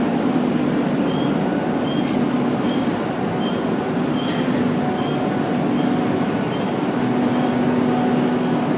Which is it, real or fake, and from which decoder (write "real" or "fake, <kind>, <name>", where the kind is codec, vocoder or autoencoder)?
real